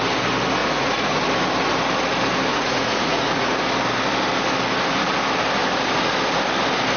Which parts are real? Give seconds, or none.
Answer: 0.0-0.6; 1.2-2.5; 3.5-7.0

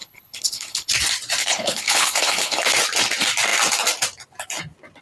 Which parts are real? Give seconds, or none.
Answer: 0.9-1.4; 2.7-5.0

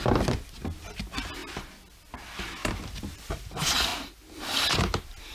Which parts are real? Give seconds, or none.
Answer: 0.0-2.6; 3.5-5.3

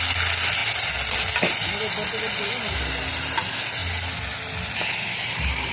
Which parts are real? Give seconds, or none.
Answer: 0.0-5.7

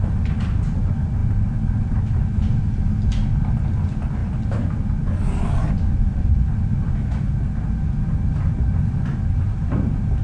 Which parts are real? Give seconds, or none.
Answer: 0.0-10.2

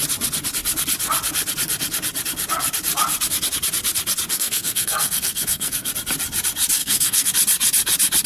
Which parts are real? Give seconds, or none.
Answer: 0.0-4.3; 5.9-6.8; 7.3-8.3

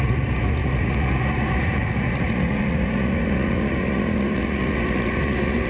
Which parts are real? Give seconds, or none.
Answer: none